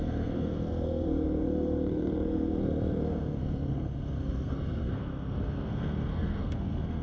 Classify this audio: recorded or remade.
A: remade